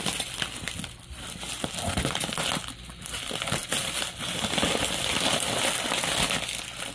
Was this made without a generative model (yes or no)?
yes